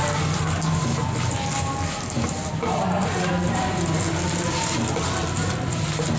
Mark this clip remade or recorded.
recorded